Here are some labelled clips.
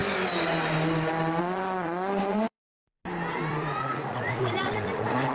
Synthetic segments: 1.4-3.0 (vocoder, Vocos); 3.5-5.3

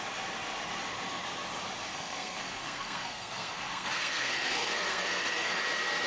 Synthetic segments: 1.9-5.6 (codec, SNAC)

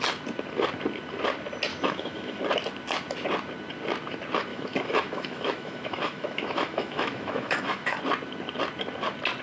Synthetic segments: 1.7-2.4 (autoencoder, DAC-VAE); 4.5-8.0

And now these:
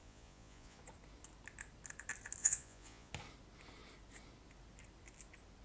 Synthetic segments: 0.0-0.8 (vocoder, Vocos); 2.4-3.1

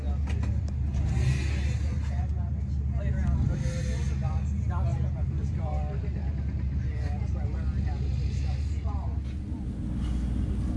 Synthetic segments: 4.9-5.8 (vocoder, BigVGAN v2)

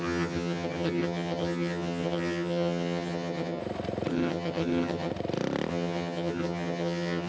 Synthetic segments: 0.0-3.6 (vocoder, HiFi-GAN); 4.1-5.1; 5.7-7.3